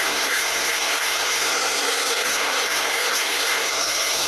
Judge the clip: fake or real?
fake